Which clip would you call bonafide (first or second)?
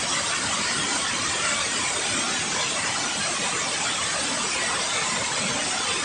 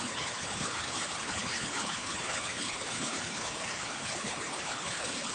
first